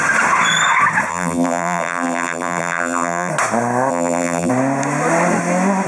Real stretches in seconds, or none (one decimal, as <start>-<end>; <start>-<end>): 0.0-1.1; 3.3-3.9; 4.5-5.9